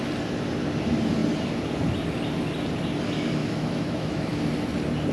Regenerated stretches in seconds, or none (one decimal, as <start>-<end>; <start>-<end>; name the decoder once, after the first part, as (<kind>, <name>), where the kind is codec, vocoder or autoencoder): 3.4-4.4 (autoencoder, DAC-VAE)